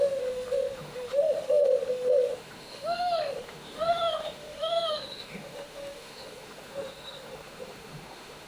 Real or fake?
fake